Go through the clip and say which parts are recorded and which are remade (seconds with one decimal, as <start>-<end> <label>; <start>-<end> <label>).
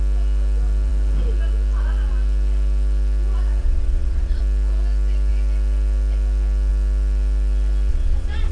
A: 0.0-3.6 recorded; 3.6-4.4 remade; 4.4-7.9 recorded; 7.9-8.5 remade